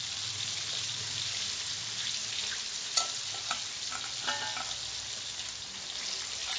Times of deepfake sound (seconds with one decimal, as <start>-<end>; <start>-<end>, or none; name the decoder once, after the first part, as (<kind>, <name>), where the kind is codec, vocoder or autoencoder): none